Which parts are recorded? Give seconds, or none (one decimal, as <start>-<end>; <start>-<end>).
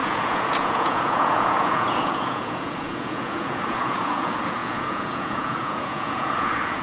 none